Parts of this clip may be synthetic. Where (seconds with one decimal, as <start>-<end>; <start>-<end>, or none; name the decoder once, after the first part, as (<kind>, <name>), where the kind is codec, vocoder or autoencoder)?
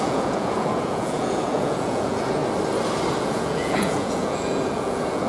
0.0-2.4 (vocoder, Vocos); 3.2-5.3